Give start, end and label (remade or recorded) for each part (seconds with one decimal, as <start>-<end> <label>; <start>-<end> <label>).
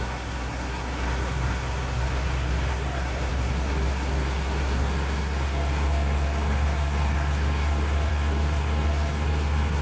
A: 0.0-9.8 remade